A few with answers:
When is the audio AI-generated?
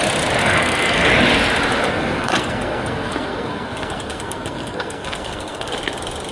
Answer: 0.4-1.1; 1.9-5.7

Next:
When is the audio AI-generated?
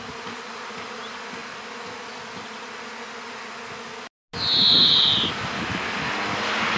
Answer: none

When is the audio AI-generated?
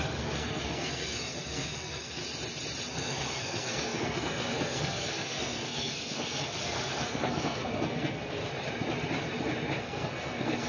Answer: 0.0-2.2; 2.9-8.4; 9.8-10.7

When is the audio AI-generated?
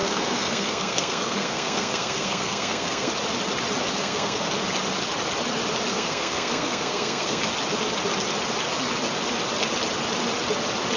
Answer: 0.0-3.1; 3.9-4.5; 5.9-7.4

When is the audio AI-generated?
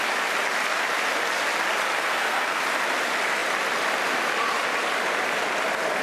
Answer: 2.0-2.6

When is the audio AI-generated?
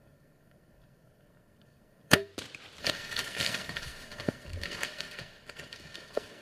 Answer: 0.0-2.3; 2.8-6.4